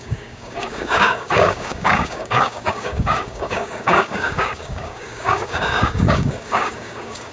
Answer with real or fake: fake